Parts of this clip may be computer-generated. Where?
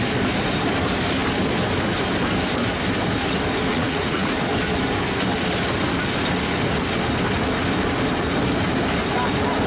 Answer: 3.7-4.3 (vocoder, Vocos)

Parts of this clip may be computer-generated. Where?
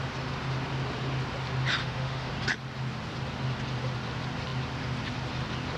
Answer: 1.8-2.3 (autoencoder, DAC-VAE)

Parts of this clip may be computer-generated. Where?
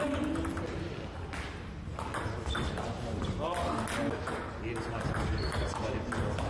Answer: none